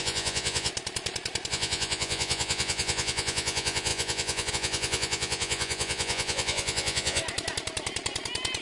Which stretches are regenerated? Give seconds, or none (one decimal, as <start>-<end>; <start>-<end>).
0.0-0.7; 1.5-7.2